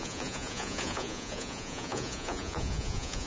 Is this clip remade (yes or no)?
yes